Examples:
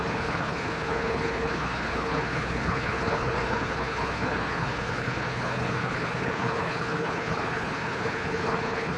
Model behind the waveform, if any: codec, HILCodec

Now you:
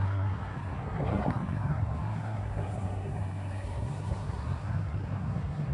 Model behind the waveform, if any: codec, SNAC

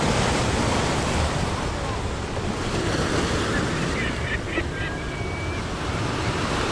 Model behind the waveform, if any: none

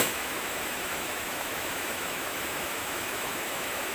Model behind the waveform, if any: autoencoder, DAC-VAE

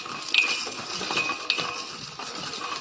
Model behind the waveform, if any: none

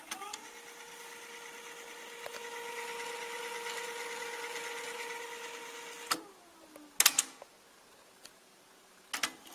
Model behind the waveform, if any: none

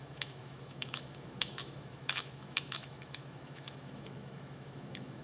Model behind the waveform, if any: autoencoder, DAC-VAE